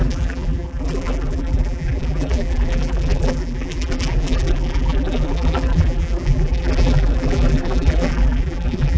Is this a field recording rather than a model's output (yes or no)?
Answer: no